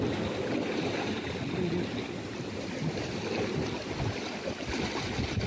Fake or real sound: real